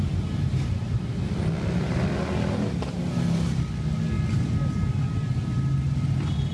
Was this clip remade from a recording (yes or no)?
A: no